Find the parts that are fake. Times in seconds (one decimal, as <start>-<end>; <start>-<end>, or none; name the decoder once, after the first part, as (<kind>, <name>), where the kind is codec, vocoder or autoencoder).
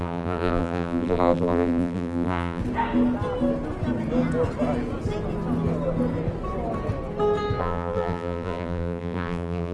0.0-2.6 (vocoder, BigVGAN v2); 7.6-9.7